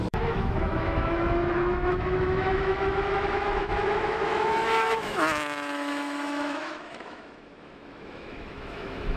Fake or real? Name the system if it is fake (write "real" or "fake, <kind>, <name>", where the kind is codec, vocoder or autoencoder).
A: fake, autoencoder, DAC-VAE